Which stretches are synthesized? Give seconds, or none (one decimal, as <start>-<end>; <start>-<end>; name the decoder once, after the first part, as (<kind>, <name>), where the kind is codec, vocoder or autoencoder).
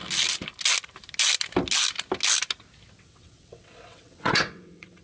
3.0-5.0 (vocoder, WaveNeXt)